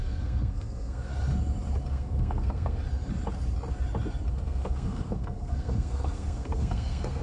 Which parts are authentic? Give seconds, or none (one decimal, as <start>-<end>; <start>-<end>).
1.1-1.9; 2.8-4.3